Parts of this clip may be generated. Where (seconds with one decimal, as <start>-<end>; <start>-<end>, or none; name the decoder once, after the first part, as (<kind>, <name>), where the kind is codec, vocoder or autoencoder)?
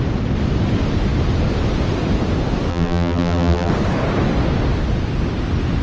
2.7-3.7 (vocoder, BigVGAN v2)